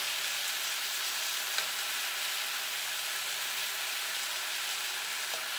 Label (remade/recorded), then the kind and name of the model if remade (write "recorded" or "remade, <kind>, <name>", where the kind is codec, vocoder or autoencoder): recorded